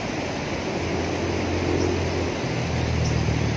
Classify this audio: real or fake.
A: real